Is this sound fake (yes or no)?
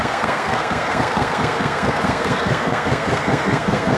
yes